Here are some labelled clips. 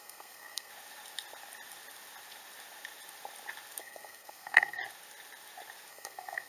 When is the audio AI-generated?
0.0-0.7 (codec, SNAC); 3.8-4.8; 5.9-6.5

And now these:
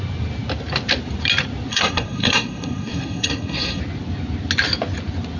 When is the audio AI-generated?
1.7-3.8 (codec, SNAC)